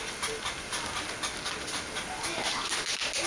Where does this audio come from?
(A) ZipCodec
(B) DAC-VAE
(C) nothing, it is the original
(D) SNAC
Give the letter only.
C